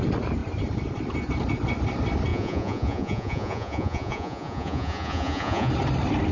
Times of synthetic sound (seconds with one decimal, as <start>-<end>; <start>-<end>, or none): 2.3-5.7